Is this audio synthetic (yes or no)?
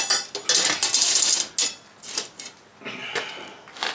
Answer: no